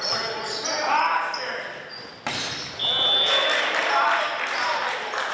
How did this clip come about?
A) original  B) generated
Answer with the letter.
A